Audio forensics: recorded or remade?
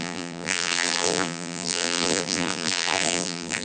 remade